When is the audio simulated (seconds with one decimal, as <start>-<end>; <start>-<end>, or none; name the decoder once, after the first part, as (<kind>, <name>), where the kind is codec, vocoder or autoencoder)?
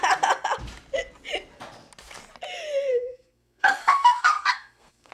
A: 2.9-5.1 (codec, SNAC)